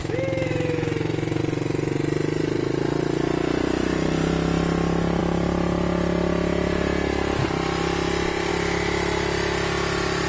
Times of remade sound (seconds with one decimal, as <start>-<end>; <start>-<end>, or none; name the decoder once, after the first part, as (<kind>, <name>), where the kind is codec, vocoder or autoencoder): 0.0-1.4 (autoencoder, DAC-VAE)